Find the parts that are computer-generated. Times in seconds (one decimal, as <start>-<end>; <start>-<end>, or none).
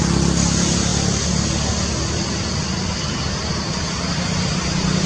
none